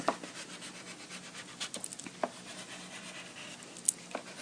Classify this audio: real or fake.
real